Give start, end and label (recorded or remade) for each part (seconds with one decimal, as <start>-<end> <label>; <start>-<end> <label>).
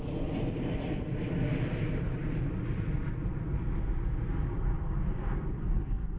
0.0-6.2 recorded